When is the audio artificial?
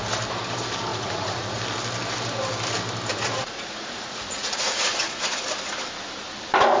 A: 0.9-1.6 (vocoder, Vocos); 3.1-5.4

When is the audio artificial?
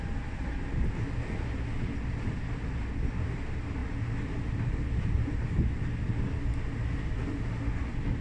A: none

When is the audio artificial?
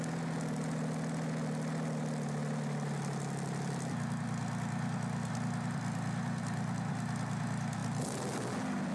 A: none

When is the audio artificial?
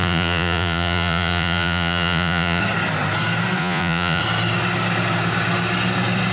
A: 0.0-2.6 (vocoder, Vocos); 3.6-4.2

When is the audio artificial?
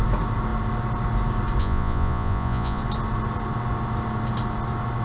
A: 1.6-2.8 (vocoder, Vocos)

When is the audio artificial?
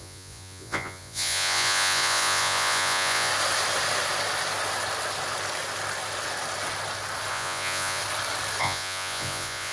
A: 0.0-3.3 (vocoder, Vocos); 7.3-8.0; 8.6-9.7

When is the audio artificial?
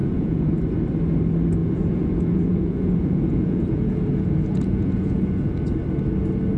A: 0.0-0.6 (vocoder, Vocos); 1.6-5.6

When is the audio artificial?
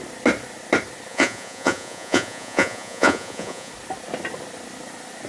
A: 1.1-3.7 (vocoder, Vocos)